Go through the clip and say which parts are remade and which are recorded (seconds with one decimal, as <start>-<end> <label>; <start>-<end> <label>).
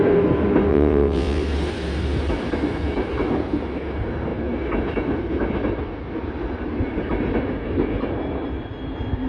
0.0-0.7 recorded; 0.7-1.4 remade; 1.4-9.3 recorded